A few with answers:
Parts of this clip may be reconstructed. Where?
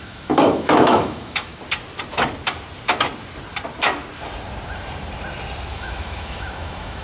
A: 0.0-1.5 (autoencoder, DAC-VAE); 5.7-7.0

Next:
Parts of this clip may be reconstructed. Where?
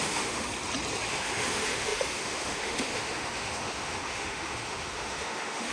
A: 0.0-0.5 (autoencoder, DAC-VAE); 1.1-5.7